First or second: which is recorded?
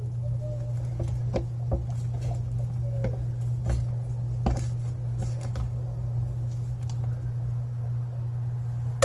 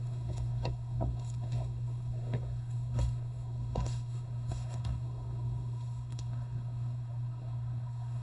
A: first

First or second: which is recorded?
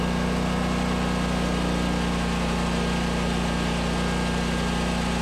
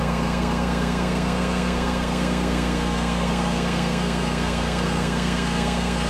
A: first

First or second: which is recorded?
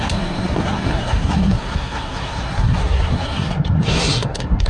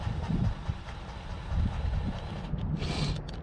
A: second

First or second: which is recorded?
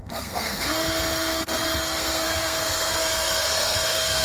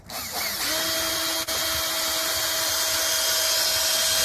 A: second